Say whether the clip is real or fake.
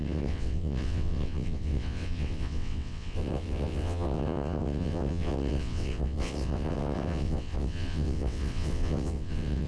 fake